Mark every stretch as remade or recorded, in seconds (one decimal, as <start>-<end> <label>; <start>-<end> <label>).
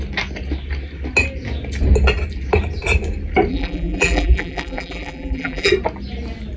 0.0-3.5 recorded; 3.5-5.7 remade; 5.7-6.6 recorded